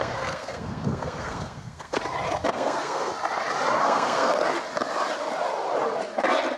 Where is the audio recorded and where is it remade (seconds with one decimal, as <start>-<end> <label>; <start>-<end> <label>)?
0.0-2.0 remade; 2.0-2.5 recorded; 2.5-3.1 remade; 3.1-3.8 recorded; 3.8-4.4 remade; 4.4-6.6 recorded